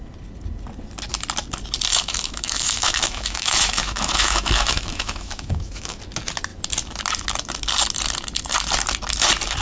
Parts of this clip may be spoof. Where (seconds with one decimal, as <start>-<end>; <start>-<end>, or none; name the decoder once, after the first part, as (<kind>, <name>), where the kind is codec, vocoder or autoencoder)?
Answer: 1.9-6.0 (autoencoder, DAC-VAE)